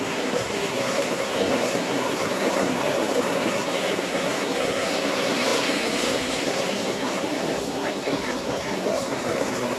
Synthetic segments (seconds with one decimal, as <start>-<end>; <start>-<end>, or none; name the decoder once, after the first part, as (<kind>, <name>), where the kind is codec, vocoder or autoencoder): 0.0-9.8 (codec, SNAC)